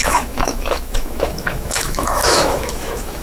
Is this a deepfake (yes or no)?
yes